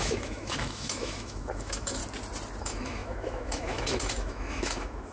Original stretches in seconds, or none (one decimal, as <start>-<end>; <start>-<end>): 2.0-2.6